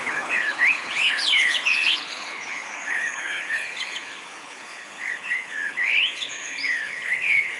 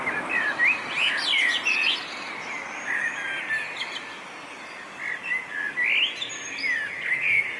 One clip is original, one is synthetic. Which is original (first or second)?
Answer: second